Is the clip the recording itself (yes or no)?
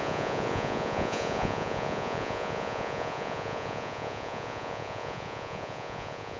no